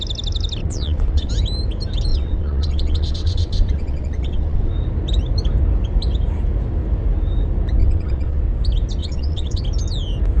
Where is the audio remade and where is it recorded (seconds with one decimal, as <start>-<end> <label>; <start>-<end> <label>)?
0.0-0.6 recorded; 0.6-1.3 remade; 1.3-2.1 recorded; 2.1-4.7 remade; 4.7-7.8 recorded; 7.8-8.4 remade; 8.4-9.0 recorded; 9.0-9.6 remade; 9.6-10.4 recorded